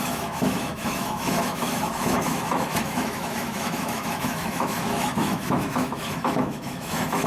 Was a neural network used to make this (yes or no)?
yes